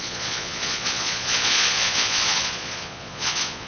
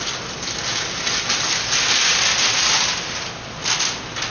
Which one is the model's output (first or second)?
first